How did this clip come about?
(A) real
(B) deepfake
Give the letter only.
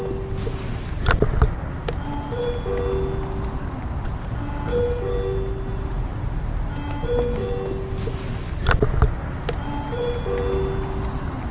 A